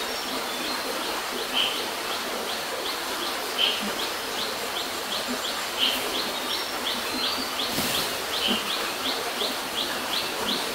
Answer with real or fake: real